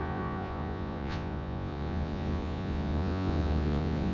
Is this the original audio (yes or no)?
no